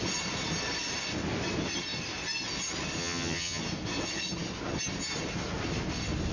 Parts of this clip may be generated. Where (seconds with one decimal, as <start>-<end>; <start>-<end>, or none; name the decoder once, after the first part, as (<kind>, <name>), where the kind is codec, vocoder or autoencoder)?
3.0-3.6 (vocoder, HiFi-GAN)